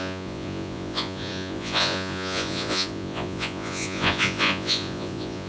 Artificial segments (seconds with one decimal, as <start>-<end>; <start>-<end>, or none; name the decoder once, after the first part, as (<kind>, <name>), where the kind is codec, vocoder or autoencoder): 0.0-5.5 (vocoder, Vocos)